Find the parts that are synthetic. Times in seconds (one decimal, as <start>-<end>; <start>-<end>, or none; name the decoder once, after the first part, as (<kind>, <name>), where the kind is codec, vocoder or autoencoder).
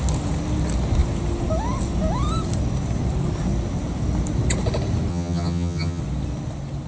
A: 5.1-6.0 (vocoder, HiFi-GAN)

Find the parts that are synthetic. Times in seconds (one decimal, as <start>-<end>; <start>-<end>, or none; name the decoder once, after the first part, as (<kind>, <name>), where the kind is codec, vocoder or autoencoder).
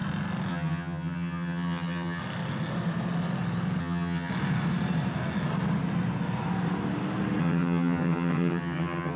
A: 0.5-2.2 (vocoder, HiFi-GAN); 3.8-4.3; 7.4-9.2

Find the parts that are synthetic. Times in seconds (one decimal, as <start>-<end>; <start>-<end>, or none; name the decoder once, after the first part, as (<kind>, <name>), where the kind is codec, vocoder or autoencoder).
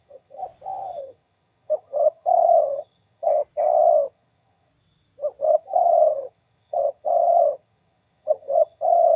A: 0.0-0.4 (vocoder, HiFi-GAN); 1.0-3.4; 4.1-4.7; 5.4-9.2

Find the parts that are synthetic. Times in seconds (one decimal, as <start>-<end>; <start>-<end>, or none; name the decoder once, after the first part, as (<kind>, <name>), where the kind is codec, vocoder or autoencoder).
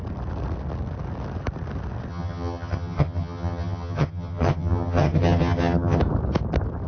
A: 2.1-6.0 (vocoder, HiFi-GAN)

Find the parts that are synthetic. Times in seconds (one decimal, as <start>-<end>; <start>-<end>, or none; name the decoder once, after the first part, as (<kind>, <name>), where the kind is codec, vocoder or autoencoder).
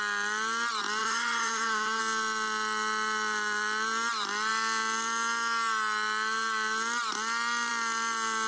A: 1.0-2.0 (vocoder, HiFi-GAN)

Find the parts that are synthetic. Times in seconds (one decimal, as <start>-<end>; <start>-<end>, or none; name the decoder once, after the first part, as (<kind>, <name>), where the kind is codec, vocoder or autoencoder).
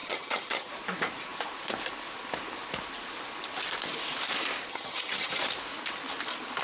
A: 0.0-0.7 (vocoder, HiFi-GAN); 4.7-5.4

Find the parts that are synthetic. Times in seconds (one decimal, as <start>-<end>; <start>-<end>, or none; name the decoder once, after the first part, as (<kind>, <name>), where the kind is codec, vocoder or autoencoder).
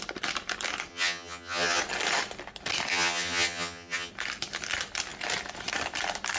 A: 0.9-1.8 (vocoder, HiFi-GAN); 2.9-4.1